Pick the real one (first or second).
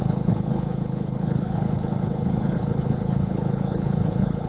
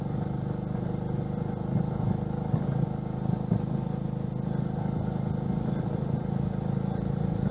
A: second